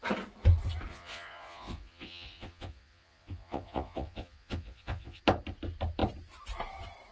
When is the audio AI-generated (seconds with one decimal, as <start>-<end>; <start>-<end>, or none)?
0.9-5.2